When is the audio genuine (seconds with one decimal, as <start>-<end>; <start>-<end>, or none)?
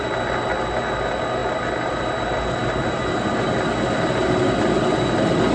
0.0-5.5